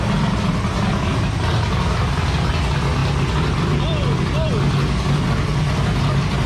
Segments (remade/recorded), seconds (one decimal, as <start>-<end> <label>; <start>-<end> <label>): 0.0-1.1 recorded; 1.1-2.5 remade; 2.5-3.0 recorded; 3.0-4.5 remade; 4.5-5.5 recorded; 5.5-6.0 remade; 6.0-6.5 recorded